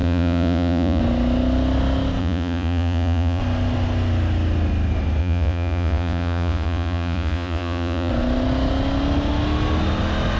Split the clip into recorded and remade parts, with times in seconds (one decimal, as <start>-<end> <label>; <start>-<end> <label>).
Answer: 0.0-1.0 remade; 1.0-2.2 recorded; 2.2-3.4 remade; 3.4-5.2 recorded; 5.2-8.1 remade; 8.1-10.4 recorded